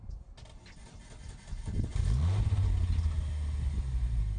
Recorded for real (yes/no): yes